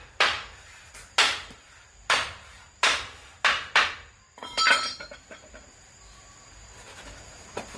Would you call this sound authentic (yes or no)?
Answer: no